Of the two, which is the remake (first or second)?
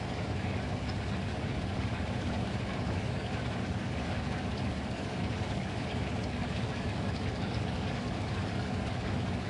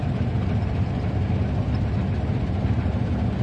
first